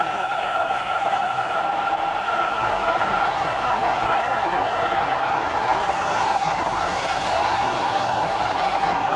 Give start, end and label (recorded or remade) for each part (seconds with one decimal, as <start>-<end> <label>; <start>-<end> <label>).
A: 0.0-1.6 remade; 1.6-2.2 recorded; 2.2-9.2 remade